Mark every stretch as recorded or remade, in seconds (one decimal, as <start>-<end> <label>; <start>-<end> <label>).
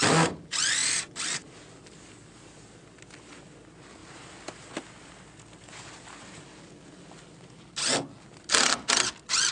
0.0-9.5 recorded